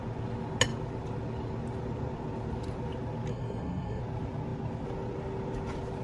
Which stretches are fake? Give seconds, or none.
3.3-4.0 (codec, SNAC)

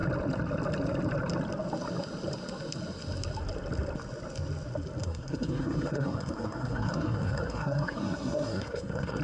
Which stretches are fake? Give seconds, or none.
5.0-9.2 (codec, SNAC)

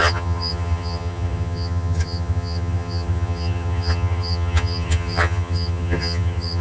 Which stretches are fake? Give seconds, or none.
0.0-6.6 (vocoder, HiFi-GAN)

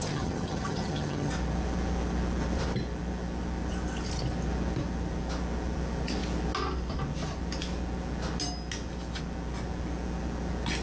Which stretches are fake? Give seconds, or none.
0.0-1.3 (vocoder, HiFi-GAN)